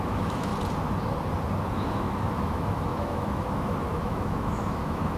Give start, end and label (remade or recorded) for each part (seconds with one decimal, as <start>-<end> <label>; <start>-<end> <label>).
0.0-0.5 remade; 0.5-1.7 recorded; 1.7-5.2 remade